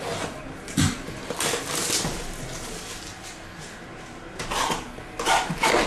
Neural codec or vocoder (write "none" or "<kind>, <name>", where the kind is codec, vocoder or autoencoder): none